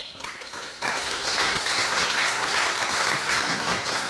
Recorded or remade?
remade